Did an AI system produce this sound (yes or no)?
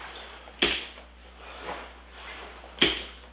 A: no